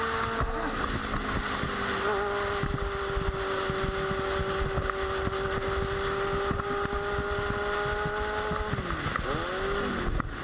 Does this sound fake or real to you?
real